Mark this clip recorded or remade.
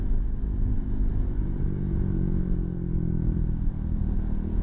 recorded